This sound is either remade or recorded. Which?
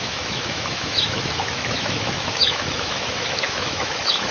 remade